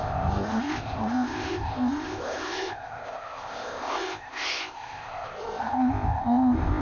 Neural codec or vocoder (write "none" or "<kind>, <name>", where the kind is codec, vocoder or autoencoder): codec, ZipCodec